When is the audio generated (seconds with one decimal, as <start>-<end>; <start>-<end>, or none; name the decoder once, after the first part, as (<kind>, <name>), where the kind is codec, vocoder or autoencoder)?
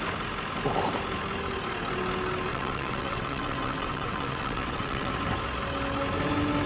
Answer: 2.5-5.1 (vocoder, WaveNeXt)